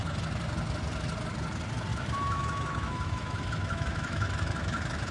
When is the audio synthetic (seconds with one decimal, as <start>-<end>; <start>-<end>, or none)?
1.9-5.1